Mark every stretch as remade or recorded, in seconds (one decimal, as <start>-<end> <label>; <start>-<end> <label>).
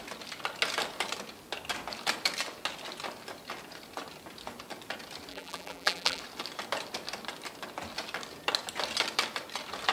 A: 0.0-5.3 recorded; 5.3-6.2 remade; 6.2-9.9 recorded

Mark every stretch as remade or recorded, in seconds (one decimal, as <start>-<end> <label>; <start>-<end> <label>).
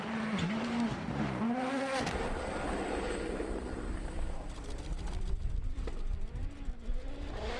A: 0.0-6.4 remade; 6.4-7.6 recorded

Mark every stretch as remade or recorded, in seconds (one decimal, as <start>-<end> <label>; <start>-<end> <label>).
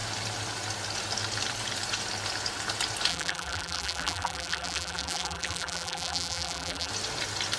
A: 0.0-3.1 recorded; 3.1-6.9 remade; 6.9-7.6 recorded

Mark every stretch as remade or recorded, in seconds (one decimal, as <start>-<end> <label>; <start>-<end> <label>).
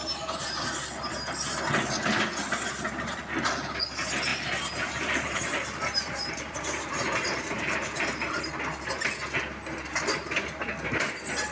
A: 0.0-4.3 recorded; 4.3-8.4 remade; 8.4-11.5 recorded